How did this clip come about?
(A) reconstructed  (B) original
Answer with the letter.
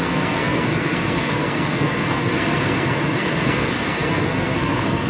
A